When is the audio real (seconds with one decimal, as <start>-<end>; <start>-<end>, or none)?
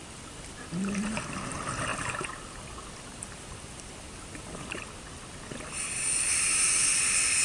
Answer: 0.0-1.9; 2.6-3.1; 4.8-7.4